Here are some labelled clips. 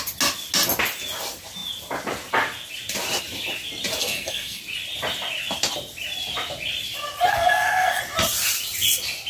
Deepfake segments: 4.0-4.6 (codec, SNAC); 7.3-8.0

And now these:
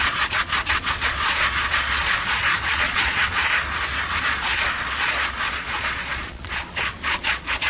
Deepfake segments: 0.0-3.4 (vocoder, Vocos); 4.2-7.7

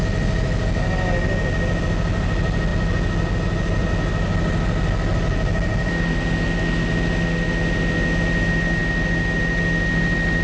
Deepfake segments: none

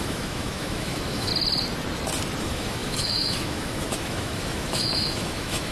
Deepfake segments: 0.0-1.3 (autoencoder, DAC-VAE); 2.4-5.7

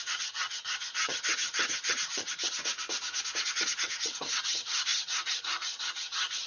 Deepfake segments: 0.0-2.6 (vocoder, HiFi-GAN); 3.4-6.5

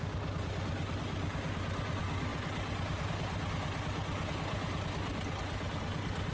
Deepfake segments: none

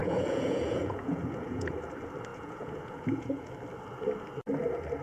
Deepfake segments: 0.0-1.7 (vocoder, Vocos); 2.3-3.5